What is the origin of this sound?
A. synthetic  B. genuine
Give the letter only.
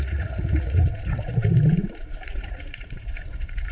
A